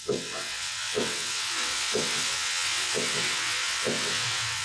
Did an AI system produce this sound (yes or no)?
yes